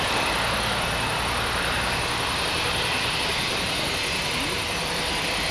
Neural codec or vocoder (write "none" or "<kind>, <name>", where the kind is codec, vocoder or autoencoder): none